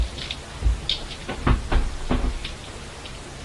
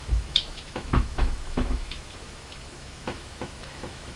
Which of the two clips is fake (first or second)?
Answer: second